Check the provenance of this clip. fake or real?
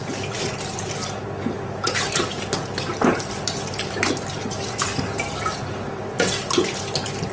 real